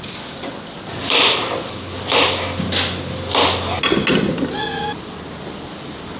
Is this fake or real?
real